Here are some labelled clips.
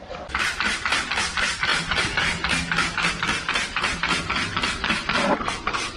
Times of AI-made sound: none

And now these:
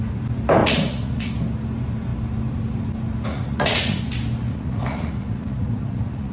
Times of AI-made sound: 0.6-1.3 (vocoder, Vocos); 3.3-4.0; 4.5-6.3